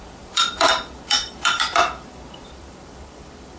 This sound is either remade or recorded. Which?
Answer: remade